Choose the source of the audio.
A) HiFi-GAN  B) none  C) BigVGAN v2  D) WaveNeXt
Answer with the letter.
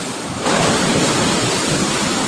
B